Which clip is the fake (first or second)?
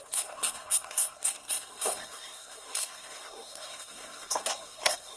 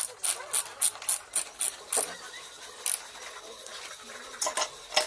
first